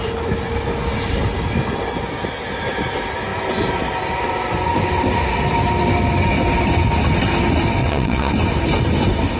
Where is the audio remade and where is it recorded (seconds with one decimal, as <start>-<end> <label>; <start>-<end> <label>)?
0.0-7.8 recorded; 7.8-8.3 remade; 8.3-9.4 recorded